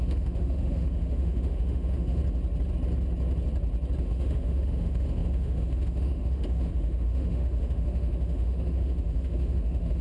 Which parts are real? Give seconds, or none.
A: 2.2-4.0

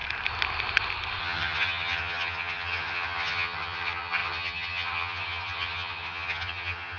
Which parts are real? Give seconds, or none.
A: 0.0-1.2

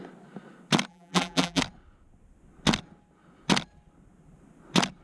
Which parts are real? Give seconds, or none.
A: 0.0-0.9; 1.6-5.0

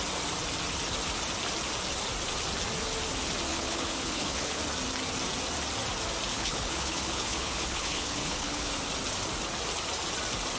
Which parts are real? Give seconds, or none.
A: 0.0-3.5; 4.6-6.3; 8.7-10.6